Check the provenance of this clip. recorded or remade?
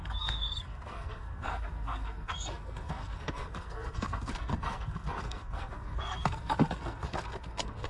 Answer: remade